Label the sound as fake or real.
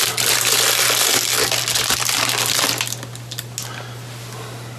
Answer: real